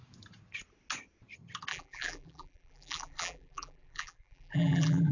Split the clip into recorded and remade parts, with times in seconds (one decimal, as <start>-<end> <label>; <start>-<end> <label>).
0.0-1.7 recorded; 1.7-5.1 remade